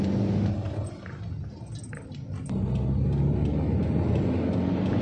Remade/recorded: recorded